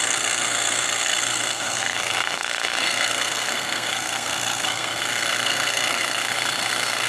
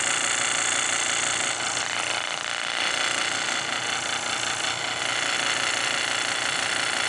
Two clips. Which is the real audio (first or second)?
second